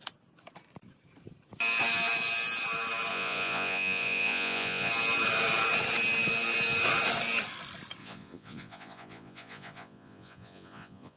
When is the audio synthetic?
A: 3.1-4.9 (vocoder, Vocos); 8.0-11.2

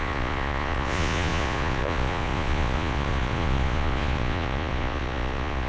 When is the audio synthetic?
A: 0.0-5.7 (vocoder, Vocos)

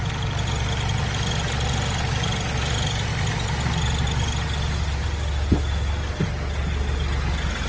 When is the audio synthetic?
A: none

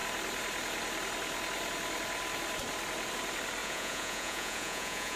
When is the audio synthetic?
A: 3.6-5.2 (vocoder, Vocos)

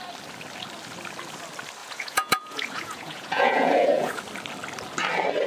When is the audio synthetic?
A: 1.8-4.2 (vocoder, Vocos)

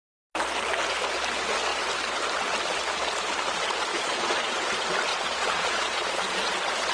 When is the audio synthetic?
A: 3.9-4.5 (vocoder, Vocos); 5.1-6.5

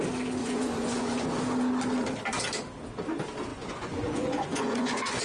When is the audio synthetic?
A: 0.4-1.3 (vocoder, Vocos); 3.5-5.2

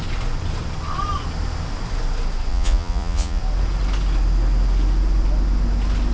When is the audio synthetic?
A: 2.5-3.4 (vocoder, Vocos)